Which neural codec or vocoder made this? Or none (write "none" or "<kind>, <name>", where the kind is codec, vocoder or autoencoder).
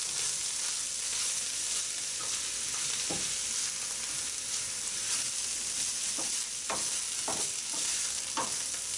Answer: none